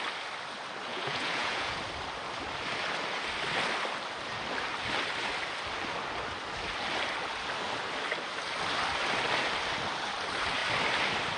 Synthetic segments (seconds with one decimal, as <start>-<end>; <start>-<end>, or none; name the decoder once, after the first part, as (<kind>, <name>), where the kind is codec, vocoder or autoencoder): 0.9-1.8 (vocoder, Vocos)